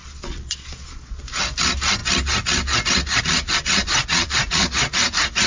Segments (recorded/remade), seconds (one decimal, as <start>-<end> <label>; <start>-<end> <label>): 0.0-1.2 remade; 1.2-3.8 recorded; 3.8-4.4 remade; 4.4-5.5 recorded